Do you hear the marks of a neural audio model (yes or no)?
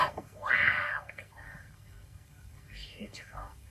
yes